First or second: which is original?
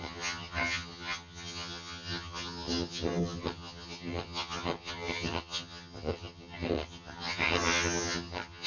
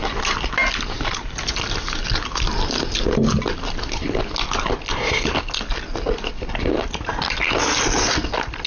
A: second